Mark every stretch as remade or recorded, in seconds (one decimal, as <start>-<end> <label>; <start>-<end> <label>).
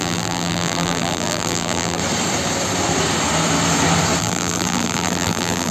0.0-2.0 remade; 2.0-4.2 recorded; 4.2-5.7 remade